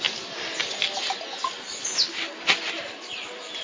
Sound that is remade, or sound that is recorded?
recorded